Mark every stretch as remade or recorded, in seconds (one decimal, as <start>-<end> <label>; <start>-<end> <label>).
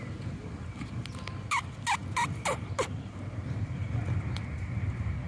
0.0-5.3 recorded